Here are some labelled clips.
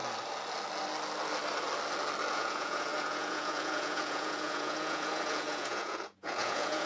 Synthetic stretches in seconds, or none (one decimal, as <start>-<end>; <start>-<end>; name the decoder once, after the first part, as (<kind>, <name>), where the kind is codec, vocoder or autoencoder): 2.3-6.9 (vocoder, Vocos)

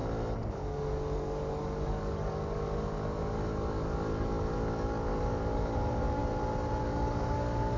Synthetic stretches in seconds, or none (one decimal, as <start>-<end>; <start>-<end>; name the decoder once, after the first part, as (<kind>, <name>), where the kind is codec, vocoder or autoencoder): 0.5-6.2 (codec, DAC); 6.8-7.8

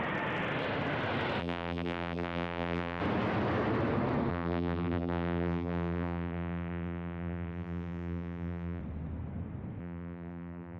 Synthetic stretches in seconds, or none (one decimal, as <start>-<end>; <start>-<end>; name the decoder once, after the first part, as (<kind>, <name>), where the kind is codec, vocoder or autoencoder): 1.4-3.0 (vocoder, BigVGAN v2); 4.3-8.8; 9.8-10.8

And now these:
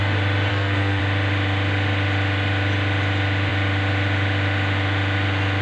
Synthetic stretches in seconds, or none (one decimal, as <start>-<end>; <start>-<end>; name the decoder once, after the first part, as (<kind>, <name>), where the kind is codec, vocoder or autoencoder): 0.5-1.0 (codec, SNAC)

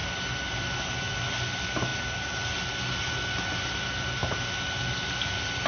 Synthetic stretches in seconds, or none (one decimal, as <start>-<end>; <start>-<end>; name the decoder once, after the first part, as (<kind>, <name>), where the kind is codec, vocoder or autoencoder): none